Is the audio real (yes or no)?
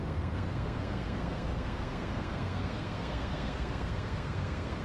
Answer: no